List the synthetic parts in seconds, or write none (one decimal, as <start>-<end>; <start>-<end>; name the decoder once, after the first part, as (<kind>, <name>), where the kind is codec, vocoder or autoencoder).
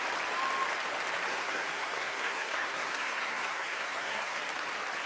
1.3-4.4 (codec, SNAC)